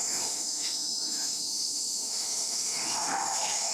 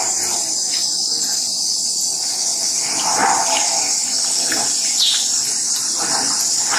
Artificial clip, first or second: first